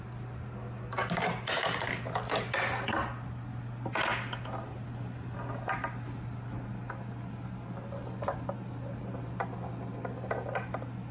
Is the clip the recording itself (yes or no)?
yes